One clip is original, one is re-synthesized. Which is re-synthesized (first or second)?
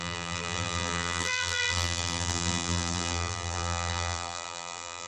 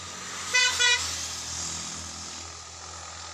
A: first